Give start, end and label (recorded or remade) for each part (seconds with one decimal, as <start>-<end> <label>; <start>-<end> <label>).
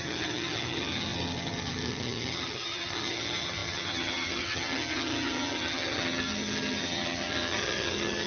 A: 0.0-8.3 remade